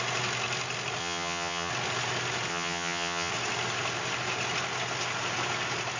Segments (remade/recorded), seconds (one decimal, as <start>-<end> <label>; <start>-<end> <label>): 0.0-1.0 recorded; 1.0-1.7 remade; 1.7-2.5 recorded; 2.5-3.3 remade; 3.3-6.0 recorded